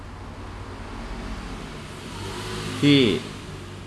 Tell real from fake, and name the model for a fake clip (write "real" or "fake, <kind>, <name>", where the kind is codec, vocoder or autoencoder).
real